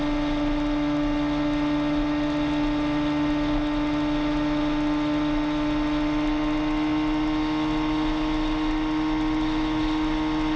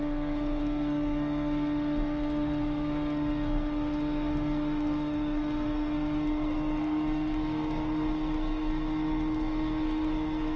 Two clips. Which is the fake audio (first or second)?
second